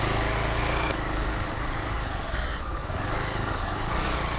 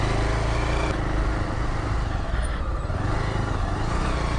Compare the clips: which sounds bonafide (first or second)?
second